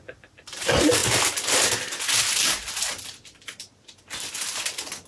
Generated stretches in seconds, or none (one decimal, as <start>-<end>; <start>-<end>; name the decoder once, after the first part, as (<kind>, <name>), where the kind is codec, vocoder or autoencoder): none